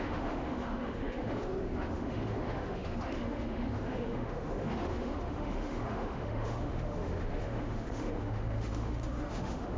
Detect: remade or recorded remade